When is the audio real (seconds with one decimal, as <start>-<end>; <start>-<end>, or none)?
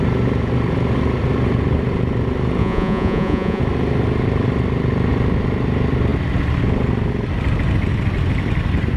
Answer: 0.0-2.6; 3.6-9.0